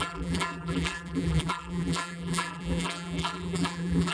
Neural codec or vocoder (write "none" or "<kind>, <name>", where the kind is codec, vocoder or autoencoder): vocoder, BigVGAN v2